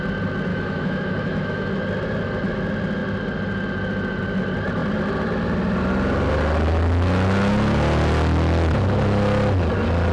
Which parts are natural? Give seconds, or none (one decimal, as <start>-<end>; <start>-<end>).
0.0-0.5; 1.7-10.1